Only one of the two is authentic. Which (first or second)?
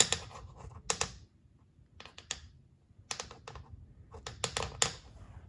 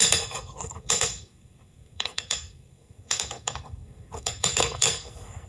first